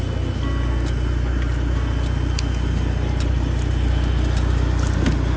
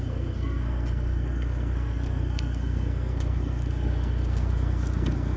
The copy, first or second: second